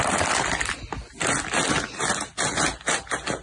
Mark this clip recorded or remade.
recorded